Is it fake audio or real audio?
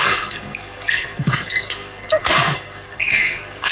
fake